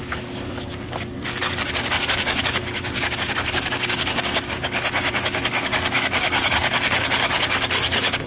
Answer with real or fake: fake